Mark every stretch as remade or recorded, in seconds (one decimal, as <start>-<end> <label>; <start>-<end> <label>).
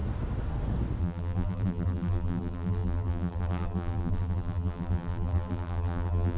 0.0-1.0 recorded; 1.0-6.4 remade